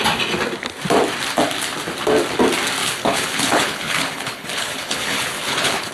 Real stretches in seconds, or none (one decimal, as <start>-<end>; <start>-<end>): 0.0-2.8

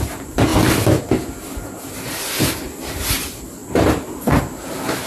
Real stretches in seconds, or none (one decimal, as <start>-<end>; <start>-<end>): 0.0-5.1

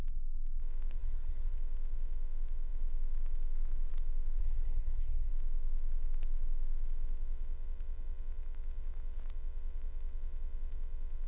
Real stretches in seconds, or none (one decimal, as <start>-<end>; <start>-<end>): 0.0-1.0; 1.5-4.4; 5.3-11.3

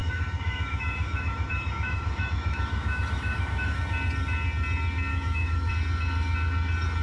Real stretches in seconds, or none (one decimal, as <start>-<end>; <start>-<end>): 3.8-5.1; 5.7-7.0

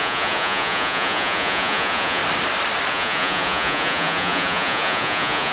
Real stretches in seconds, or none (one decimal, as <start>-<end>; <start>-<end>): 2.2-2.9